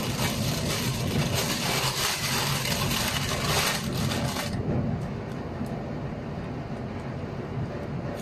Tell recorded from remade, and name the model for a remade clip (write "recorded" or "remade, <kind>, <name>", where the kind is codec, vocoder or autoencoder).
recorded